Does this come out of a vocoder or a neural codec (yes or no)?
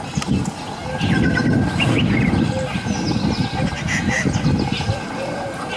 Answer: no